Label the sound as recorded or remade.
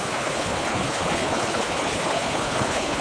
remade